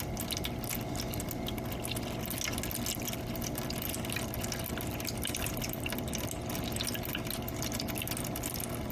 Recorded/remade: recorded